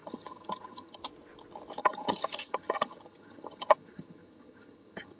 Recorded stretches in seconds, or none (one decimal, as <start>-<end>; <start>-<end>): 1.0-1.8